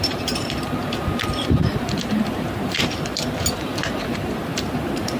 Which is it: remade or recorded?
remade